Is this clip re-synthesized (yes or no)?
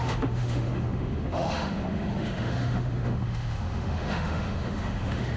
yes